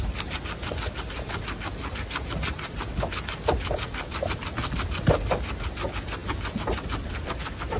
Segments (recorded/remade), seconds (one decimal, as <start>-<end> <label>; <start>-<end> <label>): 0.0-7.8 recorded